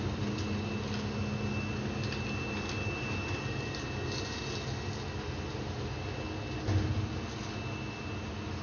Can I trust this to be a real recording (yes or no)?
yes